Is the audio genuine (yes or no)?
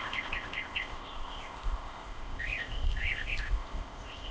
no